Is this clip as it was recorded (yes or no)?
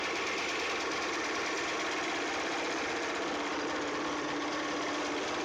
yes